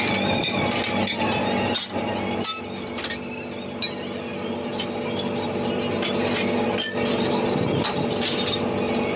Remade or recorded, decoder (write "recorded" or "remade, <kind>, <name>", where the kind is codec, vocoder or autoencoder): recorded